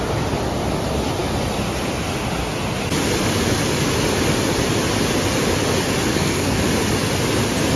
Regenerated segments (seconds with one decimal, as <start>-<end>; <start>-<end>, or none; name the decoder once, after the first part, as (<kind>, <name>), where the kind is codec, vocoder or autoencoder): 6.1-6.6 (codec, SNAC)